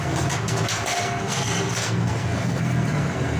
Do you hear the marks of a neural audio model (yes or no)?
yes